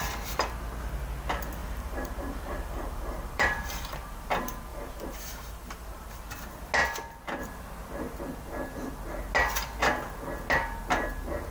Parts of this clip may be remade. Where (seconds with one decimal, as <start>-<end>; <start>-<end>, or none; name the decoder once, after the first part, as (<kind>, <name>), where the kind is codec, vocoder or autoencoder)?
1.6-4.3 (vocoder, BigVGAN v2); 4.7-6.2

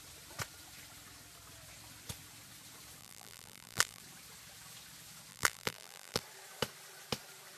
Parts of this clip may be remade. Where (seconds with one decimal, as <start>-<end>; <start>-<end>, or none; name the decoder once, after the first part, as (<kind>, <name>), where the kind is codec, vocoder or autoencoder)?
3.0-4.0 (vocoder, BigVGAN v2); 5.3-6.2

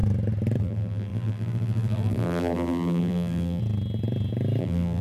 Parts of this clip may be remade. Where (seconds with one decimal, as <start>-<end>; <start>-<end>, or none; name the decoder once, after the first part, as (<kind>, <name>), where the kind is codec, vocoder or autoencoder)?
0.6-3.6 (vocoder, BigVGAN v2); 4.6-5.0

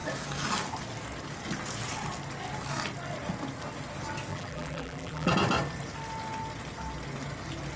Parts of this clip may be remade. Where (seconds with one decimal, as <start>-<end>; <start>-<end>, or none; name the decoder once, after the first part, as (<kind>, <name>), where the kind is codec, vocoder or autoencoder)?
4.3-5.3 (vocoder, BigVGAN v2)

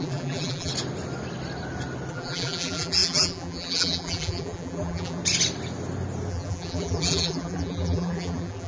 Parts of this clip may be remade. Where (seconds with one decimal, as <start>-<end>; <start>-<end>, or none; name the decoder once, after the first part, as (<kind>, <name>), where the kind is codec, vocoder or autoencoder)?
0.0-0.7 (vocoder, BigVGAN v2); 2.1-5.2; 6.3-8.7

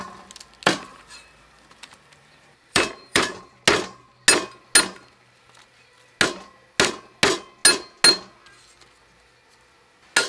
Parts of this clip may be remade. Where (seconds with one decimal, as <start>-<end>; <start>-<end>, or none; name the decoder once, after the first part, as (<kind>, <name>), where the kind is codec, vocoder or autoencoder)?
0.9-3.4 (vocoder, BigVGAN v2)

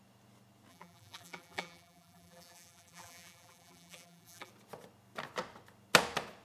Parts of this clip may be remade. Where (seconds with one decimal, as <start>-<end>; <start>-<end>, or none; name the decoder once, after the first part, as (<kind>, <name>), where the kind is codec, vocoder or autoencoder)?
0.7-4.5 (vocoder, BigVGAN v2)